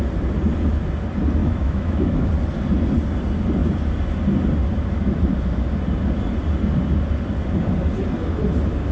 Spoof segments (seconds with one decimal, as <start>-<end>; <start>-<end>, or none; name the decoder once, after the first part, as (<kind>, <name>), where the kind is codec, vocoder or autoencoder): 1.4-2.3 (autoencoder, DAC-VAE)